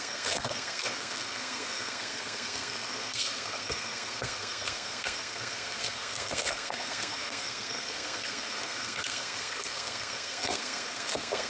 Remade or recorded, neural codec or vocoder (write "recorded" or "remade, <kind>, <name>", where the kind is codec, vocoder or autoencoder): remade, codec, SNAC